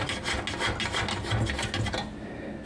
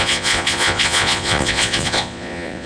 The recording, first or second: first